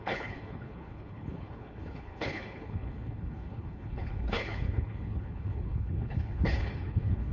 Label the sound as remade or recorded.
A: remade